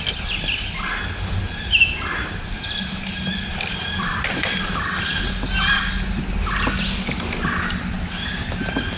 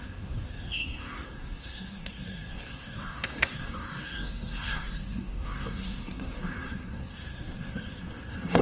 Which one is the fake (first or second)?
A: second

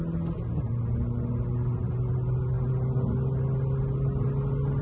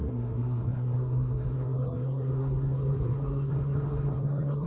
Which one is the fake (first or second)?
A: second